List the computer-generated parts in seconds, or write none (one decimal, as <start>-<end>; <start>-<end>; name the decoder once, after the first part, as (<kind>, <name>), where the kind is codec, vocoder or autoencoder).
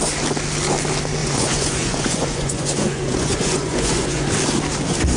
1.2-4.3 (vocoder, Vocos)